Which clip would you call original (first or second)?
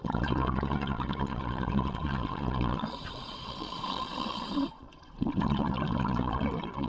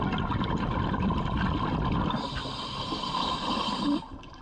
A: second